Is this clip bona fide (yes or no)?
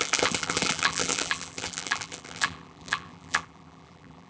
no